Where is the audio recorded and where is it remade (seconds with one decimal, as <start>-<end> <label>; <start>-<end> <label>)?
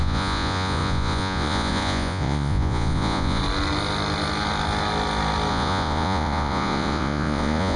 0.0-3.4 remade; 3.4-5.5 recorded; 5.5-7.8 remade